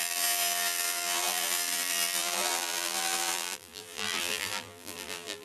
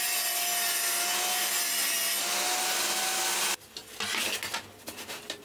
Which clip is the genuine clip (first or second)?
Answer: second